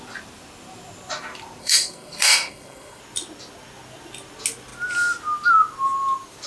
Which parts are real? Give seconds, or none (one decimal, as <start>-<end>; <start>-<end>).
0.0-1.6; 3.0-6.5